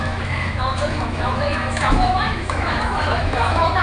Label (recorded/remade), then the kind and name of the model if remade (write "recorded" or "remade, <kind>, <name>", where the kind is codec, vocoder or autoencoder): remade, autoencoder, DAC-VAE